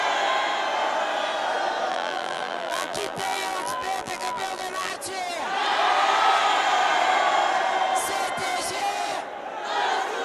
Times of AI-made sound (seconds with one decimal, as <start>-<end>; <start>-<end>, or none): 1.9-4.9